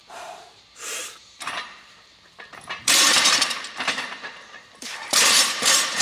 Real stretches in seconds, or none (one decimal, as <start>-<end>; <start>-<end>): none